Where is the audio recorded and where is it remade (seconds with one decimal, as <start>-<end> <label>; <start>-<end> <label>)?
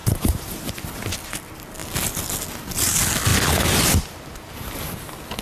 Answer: 0.0-5.4 recorded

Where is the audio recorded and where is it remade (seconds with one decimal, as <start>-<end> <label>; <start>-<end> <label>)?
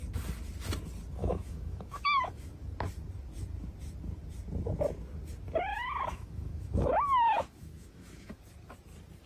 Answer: 0.0-1.2 recorded; 1.2-2.6 remade; 2.6-5.7 recorded; 5.7-8.4 remade; 8.4-9.3 recorded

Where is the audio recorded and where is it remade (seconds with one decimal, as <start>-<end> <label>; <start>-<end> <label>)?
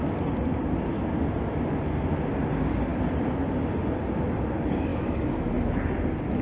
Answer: 0.0-4.9 recorded; 4.9-5.5 remade; 5.5-6.4 recorded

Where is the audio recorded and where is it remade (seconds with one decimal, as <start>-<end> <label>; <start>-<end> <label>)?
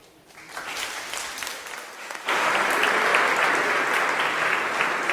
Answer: 0.0-2.0 recorded; 2.0-2.5 remade; 2.5-5.1 recorded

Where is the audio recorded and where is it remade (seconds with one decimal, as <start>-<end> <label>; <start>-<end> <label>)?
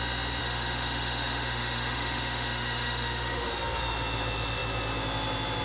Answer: 0.0-0.4 recorded; 0.4-3.5 remade; 3.5-5.6 recorded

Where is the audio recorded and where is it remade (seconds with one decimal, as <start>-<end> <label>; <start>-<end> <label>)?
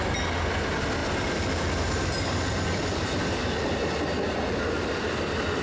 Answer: 0.0-5.6 recorded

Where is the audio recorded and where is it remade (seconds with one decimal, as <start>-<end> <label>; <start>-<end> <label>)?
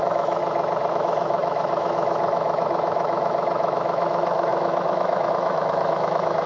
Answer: 0.0-0.4 remade; 0.4-0.9 recorded; 0.9-6.5 remade